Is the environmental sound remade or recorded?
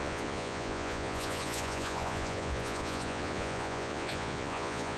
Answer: remade